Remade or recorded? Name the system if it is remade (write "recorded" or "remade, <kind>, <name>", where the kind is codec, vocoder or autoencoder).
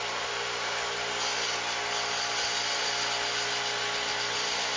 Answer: recorded